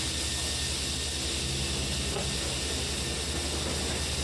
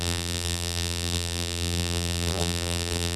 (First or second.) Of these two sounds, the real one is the first